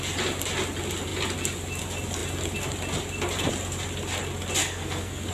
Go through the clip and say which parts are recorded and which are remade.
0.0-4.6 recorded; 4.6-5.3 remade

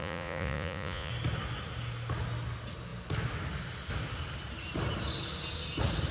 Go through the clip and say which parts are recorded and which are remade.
0.0-1.1 remade; 1.1-6.1 recorded

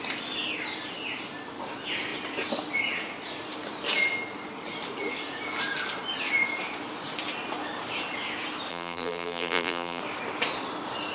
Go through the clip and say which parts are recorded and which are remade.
0.0-8.7 recorded; 8.7-10.0 remade; 10.0-11.1 recorded

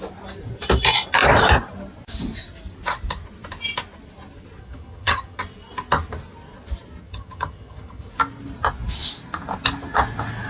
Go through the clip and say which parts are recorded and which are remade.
0.0-4.6 recorded; 4.6-5.4 remade; 5.4-7.0 recorded; 7.0-8.1 remade; 8.1-10.5 recorded

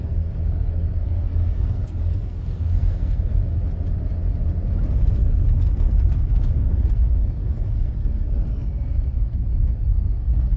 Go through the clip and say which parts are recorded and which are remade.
0.0-3.4 remade; 3.4-4.9 recorded; 4.9-10.6 remade

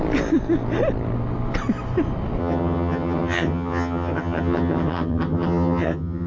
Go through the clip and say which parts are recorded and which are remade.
0.0-2.4 recorded; 2.4-6.3 remade

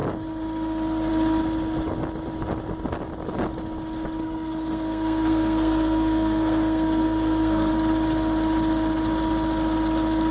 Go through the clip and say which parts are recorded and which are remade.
0.0-4.2 recorded; 4.2-7.7 remade; 7.7-10.3 recorded